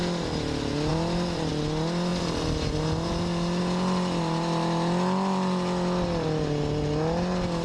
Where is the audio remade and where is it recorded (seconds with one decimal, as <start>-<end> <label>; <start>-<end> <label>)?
0.0-7.6 recorded